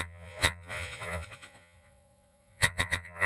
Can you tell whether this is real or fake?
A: fake